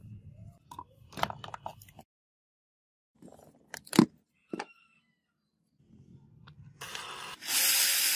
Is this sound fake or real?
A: real